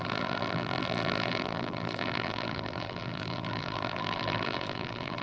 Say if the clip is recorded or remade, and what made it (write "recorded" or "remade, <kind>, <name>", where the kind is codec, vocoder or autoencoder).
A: remade, vocoder, BigVGAN v2